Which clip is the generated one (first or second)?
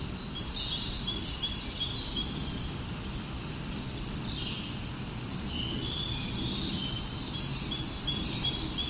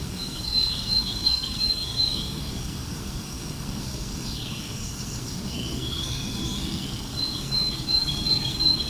second